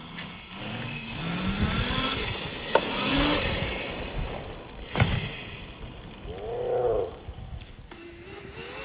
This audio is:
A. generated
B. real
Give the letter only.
B